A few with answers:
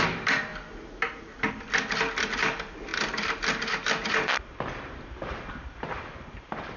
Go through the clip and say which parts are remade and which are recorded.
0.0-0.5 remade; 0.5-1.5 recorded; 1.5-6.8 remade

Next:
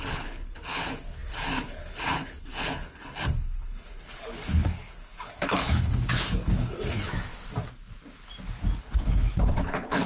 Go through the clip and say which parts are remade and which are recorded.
0.0-7.1 remade; 7.1-8.8 recorded; 8.8-10.1 remade